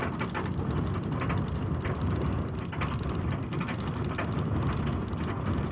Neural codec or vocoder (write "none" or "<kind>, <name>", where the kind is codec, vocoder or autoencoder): none